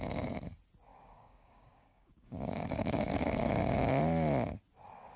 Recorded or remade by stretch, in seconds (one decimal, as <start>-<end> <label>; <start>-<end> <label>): 0.0-0.9 recorded; 0.9-4.0 remade; 4.0-5.2 recorded